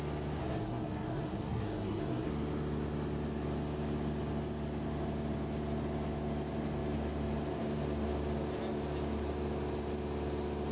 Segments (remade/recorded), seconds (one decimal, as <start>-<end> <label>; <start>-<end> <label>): 0.0-0.4 recorded; 0.4-2.3 remade; 2.3-10.7 recorded